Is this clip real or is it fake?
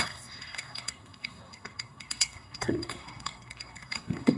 fake